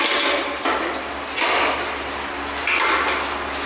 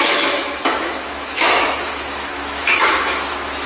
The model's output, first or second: second